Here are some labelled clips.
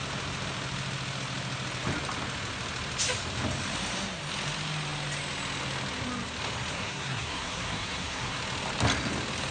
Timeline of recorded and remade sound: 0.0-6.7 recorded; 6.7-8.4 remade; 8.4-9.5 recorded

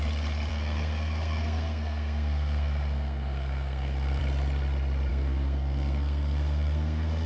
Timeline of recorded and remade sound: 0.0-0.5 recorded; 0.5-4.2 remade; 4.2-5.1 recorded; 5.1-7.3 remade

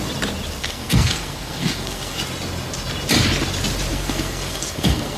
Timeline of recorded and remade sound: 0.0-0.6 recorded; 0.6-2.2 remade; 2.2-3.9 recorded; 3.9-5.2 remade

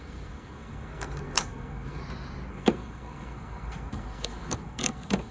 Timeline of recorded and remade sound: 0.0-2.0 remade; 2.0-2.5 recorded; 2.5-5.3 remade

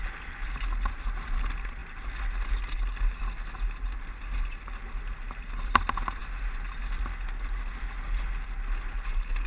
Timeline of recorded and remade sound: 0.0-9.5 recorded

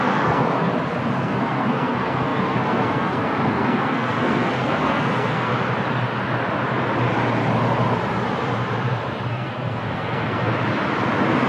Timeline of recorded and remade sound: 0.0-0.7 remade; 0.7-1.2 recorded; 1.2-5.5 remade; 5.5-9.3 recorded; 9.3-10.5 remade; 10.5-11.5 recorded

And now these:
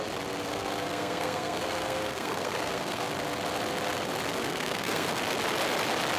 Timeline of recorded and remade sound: 0.0-0.5 recorded; 0.5-3.1 remade; 3.1-4.4 recorded; 4.4-5.2 remade; 5.2-6.2 recorded

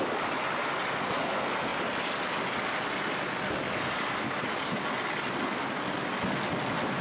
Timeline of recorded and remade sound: 0.0-7.0 recorded